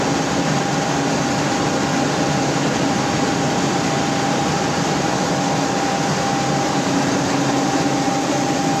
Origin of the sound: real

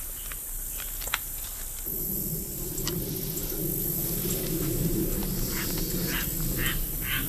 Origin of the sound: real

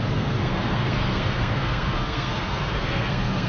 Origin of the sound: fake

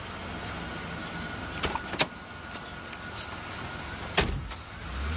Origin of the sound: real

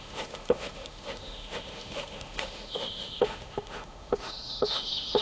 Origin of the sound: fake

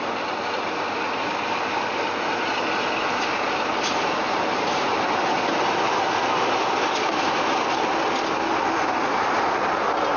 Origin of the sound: real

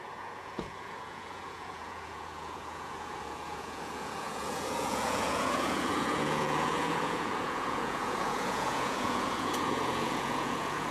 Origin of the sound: fake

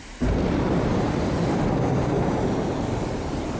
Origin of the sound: fake